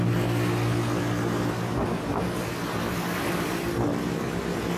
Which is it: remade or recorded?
recorded